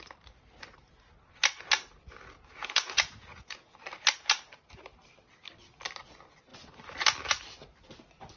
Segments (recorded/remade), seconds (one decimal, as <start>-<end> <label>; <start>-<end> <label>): 0.0-2.6 recorded; 2.6-3.7 remade; 3.7-8.4 recorded